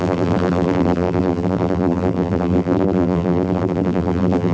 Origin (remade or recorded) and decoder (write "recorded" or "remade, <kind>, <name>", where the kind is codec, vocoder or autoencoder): remade, vocoder, BigVGAN v2